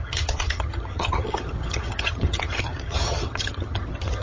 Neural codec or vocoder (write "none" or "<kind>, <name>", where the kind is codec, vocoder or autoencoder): vocoder, HiFi-GAN